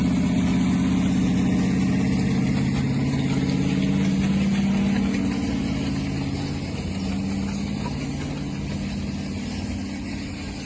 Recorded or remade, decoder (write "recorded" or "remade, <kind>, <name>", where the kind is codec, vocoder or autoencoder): recorded